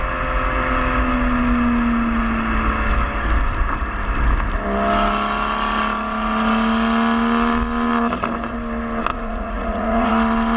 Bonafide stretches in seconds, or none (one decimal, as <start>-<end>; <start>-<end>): 0.0-9.1; 10.1-10.6